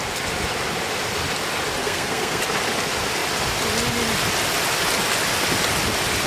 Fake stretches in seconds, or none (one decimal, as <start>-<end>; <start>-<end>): 1.8-2.4